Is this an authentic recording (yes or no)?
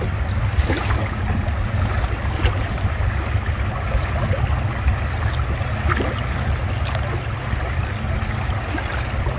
yes